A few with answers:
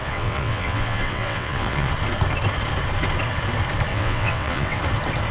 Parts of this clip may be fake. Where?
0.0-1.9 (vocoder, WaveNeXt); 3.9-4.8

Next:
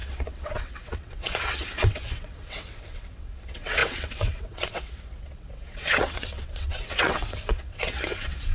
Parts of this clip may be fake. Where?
0.0-8.5 (vocoder, WaveNeXt)

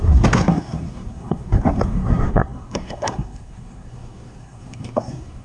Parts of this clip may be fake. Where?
0.0-5.4 (codec, SNAC)

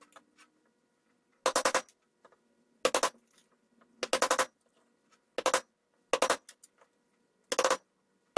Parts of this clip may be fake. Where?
none

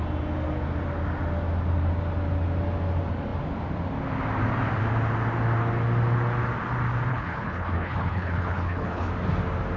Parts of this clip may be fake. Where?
7.1-9.1 (codec, HILCodec)

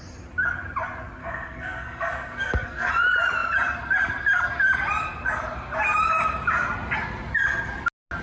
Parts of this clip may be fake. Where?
1.2-2.9 (codec, SNAC)

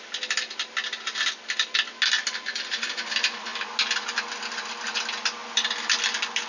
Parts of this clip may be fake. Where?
none

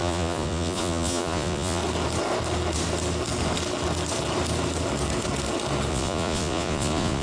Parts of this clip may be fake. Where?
0.0-1.8 (vocoder, Vocos); 5.9-7.2